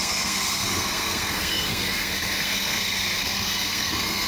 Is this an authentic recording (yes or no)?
no